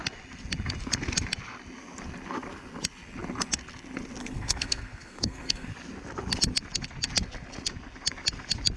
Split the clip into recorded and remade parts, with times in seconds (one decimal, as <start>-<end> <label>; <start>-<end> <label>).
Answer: 0.0-4.2 recorded; 4.2-5.7 remade; 5.7-8.8 recorded